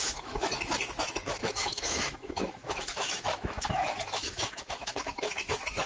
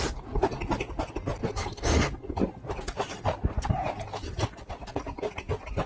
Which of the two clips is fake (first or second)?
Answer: first